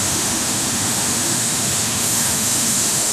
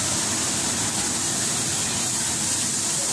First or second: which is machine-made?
first